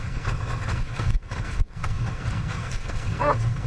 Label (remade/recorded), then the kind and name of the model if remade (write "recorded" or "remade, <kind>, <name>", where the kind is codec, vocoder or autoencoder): remade, codec, SNAC